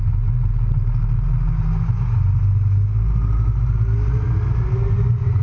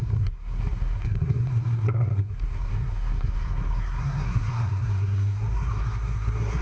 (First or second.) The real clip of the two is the first